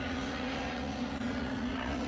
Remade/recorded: remade